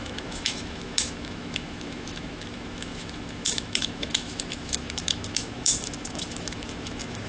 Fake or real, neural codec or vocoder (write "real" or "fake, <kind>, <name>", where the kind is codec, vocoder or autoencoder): fake, autoencoder, DAC-VAE